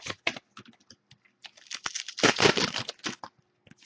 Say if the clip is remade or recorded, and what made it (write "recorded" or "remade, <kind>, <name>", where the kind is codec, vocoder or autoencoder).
recorded